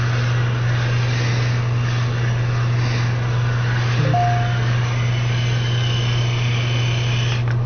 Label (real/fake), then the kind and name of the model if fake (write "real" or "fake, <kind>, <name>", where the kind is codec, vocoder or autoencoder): real